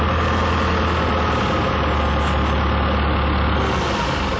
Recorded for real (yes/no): yes